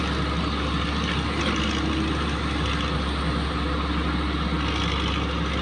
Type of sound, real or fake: real